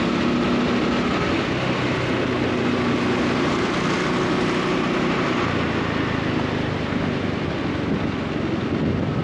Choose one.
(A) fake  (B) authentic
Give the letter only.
B